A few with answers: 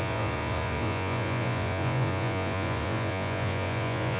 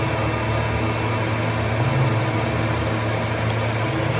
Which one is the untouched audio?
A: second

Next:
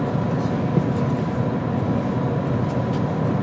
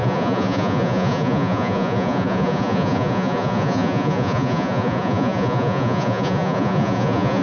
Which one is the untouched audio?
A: first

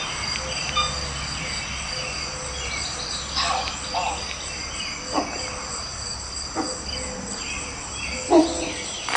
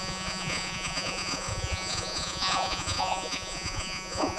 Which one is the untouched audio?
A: first